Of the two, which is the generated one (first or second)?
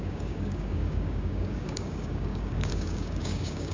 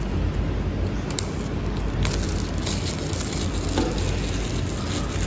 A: first